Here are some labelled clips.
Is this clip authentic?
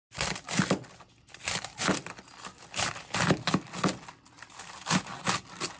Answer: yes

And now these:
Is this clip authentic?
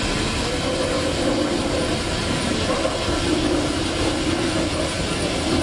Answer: yes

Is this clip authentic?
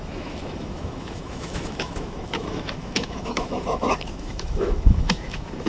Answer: no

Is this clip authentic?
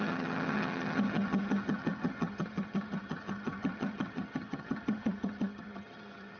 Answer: no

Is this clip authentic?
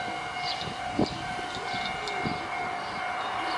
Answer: no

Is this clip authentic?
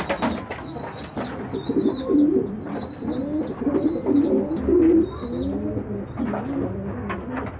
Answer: yes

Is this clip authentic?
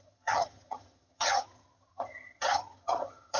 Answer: no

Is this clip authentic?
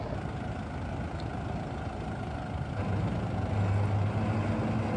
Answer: yes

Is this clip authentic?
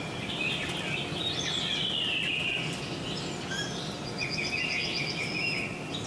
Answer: yes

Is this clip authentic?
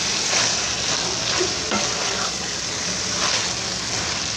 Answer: yes